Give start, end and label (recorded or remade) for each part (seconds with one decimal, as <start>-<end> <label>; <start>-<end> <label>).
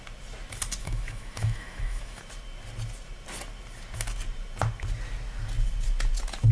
0.0-0.8 recorded; 0.8-2.2 remade; 2.2-6.5 recorded